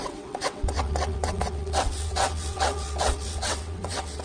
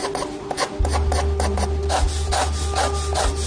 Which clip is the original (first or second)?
second